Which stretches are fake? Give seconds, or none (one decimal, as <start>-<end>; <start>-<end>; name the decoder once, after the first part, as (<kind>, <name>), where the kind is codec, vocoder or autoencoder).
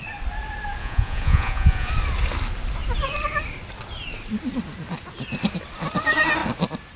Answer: 0.8-1.9 (vocoder, Vocos)